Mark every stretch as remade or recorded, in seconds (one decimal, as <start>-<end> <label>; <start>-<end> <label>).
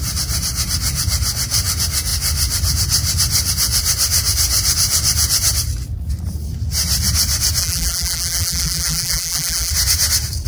0.0-7.6 recorded; 7.6-9.7 remade; 9.7-10.5 recorded